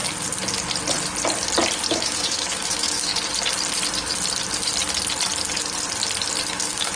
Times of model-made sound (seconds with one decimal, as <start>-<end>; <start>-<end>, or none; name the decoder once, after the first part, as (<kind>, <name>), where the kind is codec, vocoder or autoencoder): 1.9-3.1 (autoencoder, DAC-VAE); 6.5-7.0